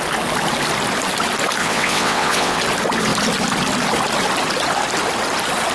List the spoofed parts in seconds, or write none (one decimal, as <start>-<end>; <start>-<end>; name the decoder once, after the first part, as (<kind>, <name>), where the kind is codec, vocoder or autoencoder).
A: 1.6-2.6 (vocoder, WaveNeXt)